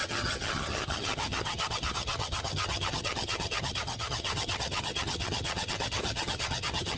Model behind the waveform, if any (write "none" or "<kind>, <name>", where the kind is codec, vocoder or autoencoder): vocoder, HiFi-GAN